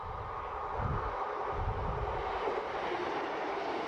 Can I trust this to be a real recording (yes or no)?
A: yes